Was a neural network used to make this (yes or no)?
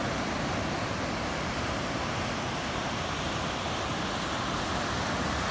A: no